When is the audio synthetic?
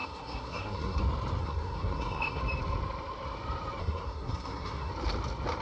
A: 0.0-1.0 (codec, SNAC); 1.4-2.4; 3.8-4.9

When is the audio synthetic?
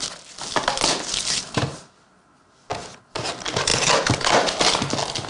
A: none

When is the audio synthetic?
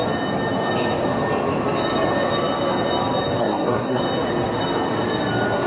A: 3.4-4.0 (codec, SNAC)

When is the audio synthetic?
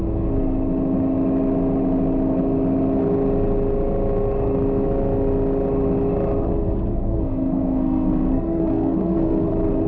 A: 6.9-9.5 (codec, SNAC)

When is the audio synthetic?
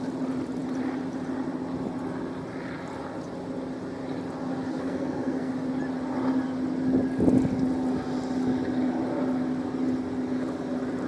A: 4.7-5.5 (codec, SNAC)